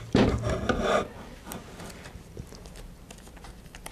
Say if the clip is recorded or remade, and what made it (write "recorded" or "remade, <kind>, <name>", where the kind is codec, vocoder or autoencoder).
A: recorded